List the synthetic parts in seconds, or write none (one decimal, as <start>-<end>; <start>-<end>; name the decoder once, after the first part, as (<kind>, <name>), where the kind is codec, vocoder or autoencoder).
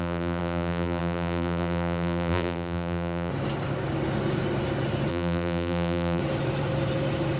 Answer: 0.0-3.3 (vocoder, BigVGAN v2); 5.1-6.2